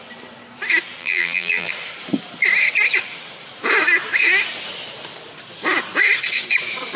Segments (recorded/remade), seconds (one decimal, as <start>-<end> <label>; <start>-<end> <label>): 0.0-1.0 recorded; 1.0-1.7 remade; 1.7-7.0 recorded

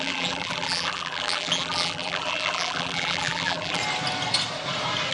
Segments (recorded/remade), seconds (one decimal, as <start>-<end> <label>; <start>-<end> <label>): 0.0-3.8 remade; 3.8-5.1 recorded